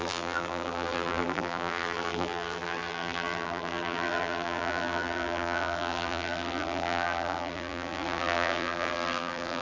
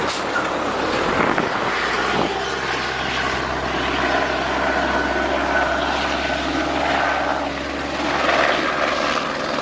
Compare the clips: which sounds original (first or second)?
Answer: second